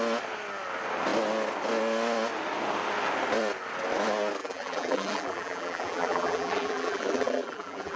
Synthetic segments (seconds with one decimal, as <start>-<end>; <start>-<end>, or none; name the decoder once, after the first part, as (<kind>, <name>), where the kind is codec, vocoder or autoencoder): 4.4-8.0 (vocoder, BigVGAN v2)